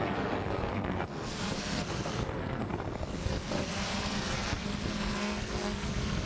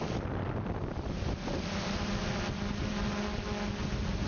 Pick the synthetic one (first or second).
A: first